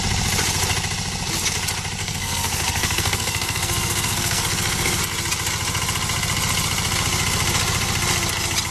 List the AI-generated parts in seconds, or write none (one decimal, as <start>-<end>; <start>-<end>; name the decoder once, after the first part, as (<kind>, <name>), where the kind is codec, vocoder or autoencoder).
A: 2.0-5.0 (codec, SNAC)